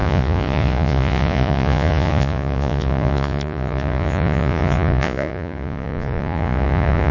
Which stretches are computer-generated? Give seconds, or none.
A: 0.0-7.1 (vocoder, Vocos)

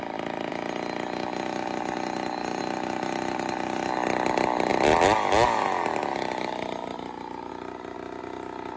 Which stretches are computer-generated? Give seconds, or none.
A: none

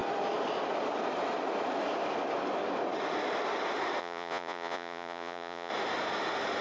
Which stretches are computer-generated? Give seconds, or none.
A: 4.0-5.7 (vocoder, Vocos)

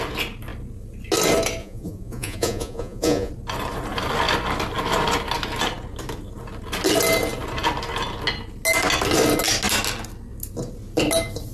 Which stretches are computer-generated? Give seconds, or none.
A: 1.6-3.3 (vocoder, Vocos)

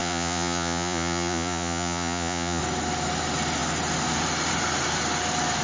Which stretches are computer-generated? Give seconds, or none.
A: 0.0-2.6 (vocoder, Vocos)